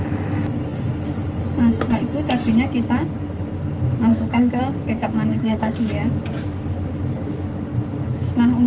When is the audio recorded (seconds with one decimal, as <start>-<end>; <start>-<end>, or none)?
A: 0.0-4.1; 4.6-5.3; 5.9-8.7